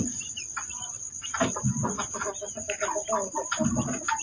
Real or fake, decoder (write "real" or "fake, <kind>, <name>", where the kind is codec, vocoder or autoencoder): real